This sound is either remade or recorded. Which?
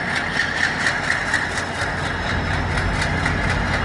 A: recorded